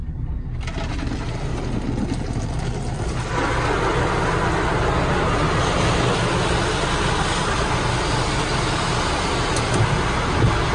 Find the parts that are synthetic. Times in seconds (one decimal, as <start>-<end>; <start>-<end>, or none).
none